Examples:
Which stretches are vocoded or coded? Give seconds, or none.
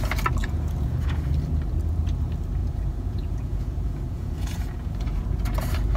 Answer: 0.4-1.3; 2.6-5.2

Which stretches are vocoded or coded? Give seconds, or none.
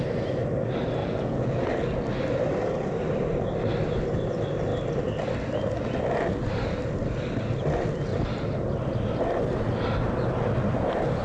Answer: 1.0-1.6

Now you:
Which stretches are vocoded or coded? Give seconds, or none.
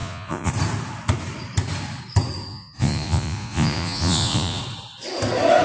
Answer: 0.0-0.5; 2.5-4.6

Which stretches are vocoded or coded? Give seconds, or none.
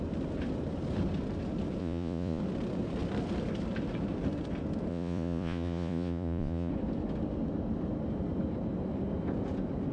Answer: 1.8-2.4; 4.9-6.7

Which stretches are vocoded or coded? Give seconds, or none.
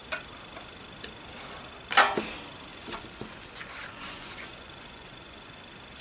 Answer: 2.7-5.6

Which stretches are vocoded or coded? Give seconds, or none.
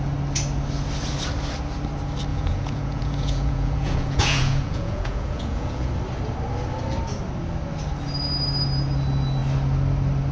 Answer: 2.3-5.9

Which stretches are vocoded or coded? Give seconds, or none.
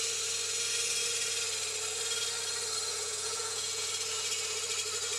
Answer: 2.9-3.9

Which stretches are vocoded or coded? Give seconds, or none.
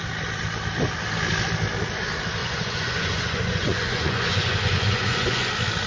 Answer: 2.4-5.5